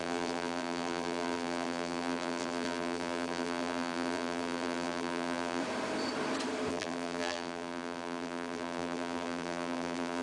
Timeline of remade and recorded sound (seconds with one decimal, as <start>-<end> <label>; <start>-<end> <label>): 0.0-5.6 remade; 5.6-6.7 recorded; 6.7-10.2 remade